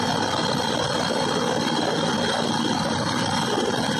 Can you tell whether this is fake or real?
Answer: real